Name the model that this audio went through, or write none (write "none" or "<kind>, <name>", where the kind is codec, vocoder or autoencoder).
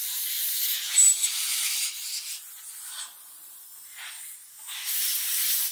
none